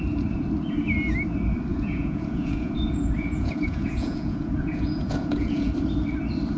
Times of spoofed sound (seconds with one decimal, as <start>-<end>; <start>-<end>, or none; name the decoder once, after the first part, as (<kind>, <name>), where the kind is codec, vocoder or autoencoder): 1.7-5.7 (vocoder, Vocos)